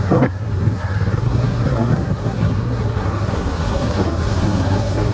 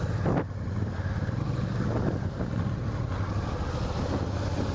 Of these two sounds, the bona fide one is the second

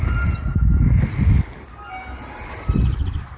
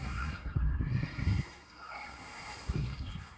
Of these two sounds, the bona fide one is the first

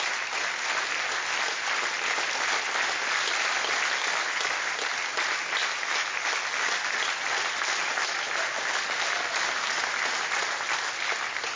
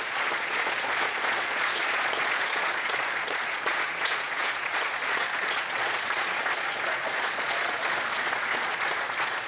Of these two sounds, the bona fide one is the first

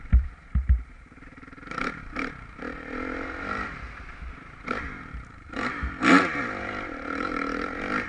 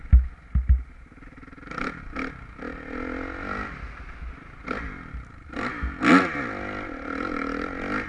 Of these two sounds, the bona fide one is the second